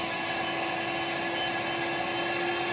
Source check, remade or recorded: recorded